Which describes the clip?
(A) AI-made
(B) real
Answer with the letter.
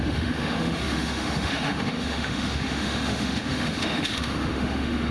A